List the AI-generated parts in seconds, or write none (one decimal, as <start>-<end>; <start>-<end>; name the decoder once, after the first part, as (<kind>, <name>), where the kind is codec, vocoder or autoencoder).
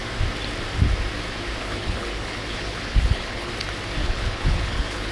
1.6-3.5 (codec, HILCodec); 4.0-5.1